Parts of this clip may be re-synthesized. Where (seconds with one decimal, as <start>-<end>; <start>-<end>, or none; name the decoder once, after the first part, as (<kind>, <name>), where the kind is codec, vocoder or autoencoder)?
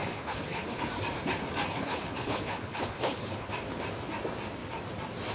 0.0-0.8 (codec, HILCodec); 1.7-3.5